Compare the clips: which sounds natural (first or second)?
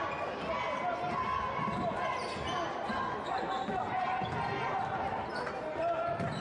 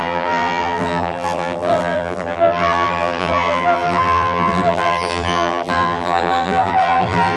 first